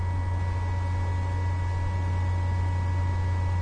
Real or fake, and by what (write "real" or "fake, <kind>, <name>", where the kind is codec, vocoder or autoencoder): real